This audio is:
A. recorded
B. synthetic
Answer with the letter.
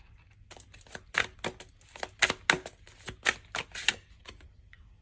A